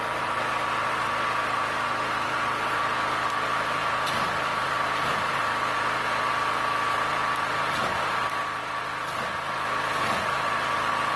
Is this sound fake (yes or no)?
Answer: no